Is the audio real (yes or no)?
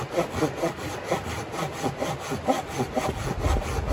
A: yes